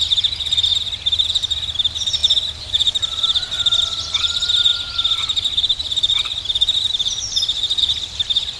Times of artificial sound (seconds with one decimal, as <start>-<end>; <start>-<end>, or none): 0.7-1.3; 4.7-7.8